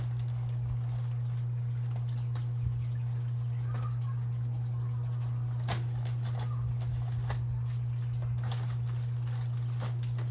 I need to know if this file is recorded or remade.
recorded